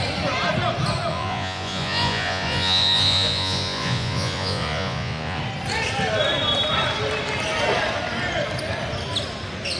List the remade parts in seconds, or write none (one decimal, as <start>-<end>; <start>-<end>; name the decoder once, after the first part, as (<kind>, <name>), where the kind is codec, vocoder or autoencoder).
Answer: 1.1-5.4 (vocoder, Vocos)